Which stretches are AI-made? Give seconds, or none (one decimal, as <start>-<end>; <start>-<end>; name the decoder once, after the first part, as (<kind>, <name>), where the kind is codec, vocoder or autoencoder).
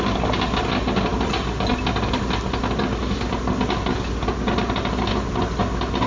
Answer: none